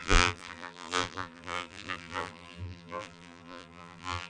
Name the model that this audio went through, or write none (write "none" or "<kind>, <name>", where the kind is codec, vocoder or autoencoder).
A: vocoder, BigVGAN v2